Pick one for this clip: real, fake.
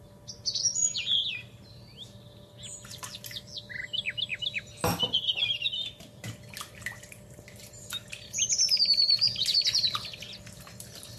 real